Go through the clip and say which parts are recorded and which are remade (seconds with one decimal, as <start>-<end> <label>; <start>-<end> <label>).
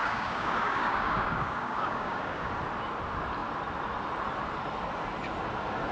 0.0-2.5 remade; 2.5-5.9 recorded